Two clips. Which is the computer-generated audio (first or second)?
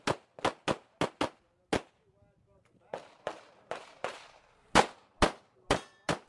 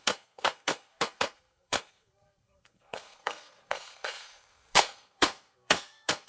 second